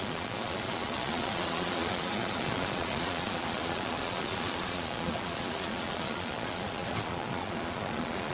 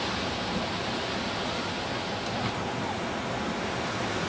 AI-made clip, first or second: first